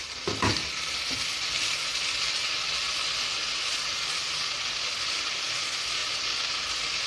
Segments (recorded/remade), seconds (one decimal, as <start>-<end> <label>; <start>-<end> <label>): 0.0-7.1 recorded